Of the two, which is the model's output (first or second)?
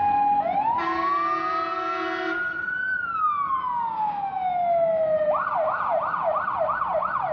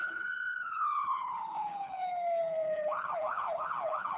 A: second